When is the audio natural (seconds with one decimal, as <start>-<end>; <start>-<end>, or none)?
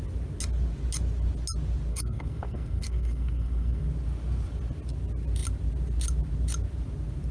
0.0-1.9; 3.9-7.3